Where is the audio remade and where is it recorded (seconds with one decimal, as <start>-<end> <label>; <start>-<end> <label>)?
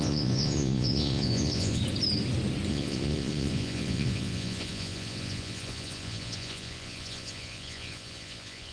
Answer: 0.0-1.8 remade; 1.8-2.7 recorded; 2.7-8.7 remade